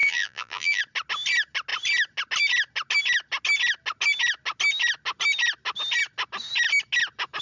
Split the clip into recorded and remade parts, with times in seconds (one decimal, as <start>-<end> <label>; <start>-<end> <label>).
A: 0.0-0.8 remade; 0.8-7.4 recorded

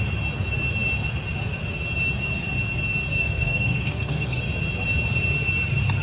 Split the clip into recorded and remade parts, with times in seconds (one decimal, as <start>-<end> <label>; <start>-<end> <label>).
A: 0.0-3.2 recorded; 3.2-4.4 remade; 4.4-6.0 recorded